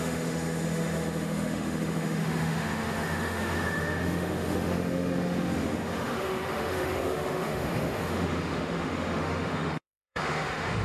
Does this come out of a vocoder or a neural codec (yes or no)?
yes